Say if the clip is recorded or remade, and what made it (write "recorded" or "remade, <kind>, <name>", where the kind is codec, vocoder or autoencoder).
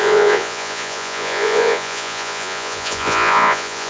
remade, vocoder, Vocos